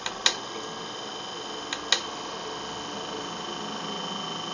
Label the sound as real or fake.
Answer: real